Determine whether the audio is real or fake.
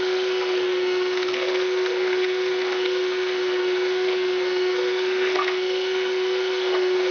fake